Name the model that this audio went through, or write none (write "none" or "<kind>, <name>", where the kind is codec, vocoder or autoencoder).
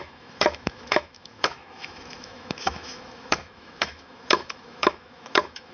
autoencoder, DAC-VAE